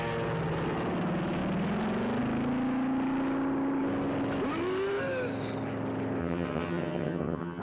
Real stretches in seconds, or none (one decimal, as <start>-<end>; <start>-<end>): 0.0-6.2